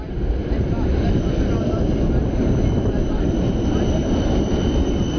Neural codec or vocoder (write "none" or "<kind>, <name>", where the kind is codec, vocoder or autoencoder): none